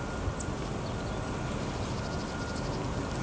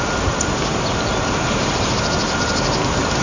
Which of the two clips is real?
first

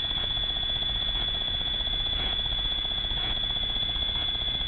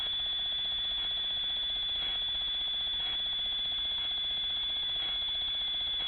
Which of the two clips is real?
second